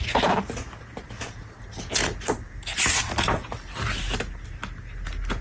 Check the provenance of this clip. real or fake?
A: real